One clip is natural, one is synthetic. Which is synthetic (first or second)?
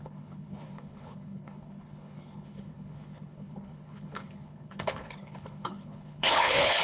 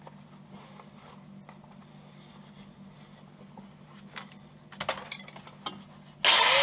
first